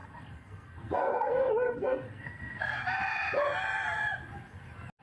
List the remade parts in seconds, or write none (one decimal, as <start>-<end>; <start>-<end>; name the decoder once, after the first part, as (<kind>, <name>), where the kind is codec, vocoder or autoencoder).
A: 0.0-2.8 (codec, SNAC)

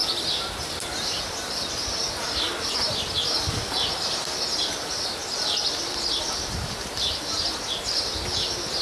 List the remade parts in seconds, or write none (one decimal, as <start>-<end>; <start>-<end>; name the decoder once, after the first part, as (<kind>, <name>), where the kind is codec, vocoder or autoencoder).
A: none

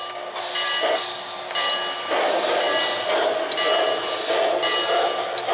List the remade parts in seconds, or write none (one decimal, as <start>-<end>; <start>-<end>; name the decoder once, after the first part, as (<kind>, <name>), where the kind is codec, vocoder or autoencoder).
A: none

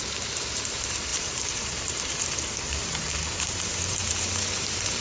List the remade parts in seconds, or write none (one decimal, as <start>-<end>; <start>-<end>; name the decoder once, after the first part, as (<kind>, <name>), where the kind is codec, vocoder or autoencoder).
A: 0.0-5.0 (vocoder, BigVGAN v2)